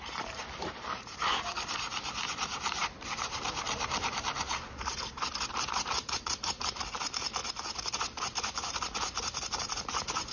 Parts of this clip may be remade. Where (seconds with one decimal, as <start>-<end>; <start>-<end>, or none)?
0.0-7.4; 7.9-10.3